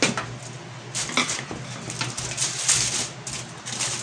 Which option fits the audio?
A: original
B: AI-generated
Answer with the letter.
A